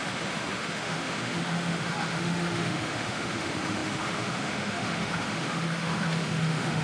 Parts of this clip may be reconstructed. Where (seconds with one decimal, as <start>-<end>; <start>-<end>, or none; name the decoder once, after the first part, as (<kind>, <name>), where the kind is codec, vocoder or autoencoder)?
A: 0.0-6.8 (autoencoder, DAC-VAE)